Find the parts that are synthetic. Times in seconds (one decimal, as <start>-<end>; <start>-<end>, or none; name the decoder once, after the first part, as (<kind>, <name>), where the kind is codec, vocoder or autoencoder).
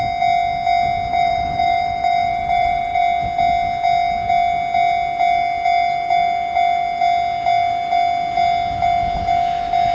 1.1-3.0 (vocoder, BigVGAN v2)